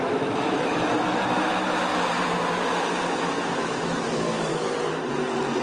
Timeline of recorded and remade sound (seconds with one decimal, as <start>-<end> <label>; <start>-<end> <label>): 0.0-1.9 remade; 1.9-3.2 recorded; 3.2-4.5 remade; 4.5-5.6 recorded